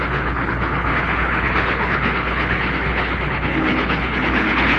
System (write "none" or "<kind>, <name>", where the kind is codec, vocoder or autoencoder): codec, HILCodec